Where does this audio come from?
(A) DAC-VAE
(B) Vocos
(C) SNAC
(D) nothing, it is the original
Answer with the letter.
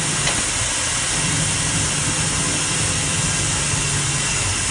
D